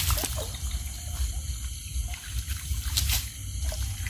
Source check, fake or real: real